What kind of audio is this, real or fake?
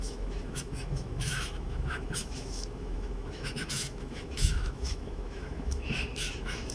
fake